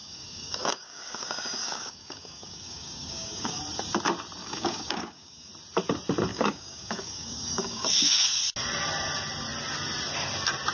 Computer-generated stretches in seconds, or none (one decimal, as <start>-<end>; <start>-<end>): 0.0-3.6; 4.4-5.5; 6.3-8.4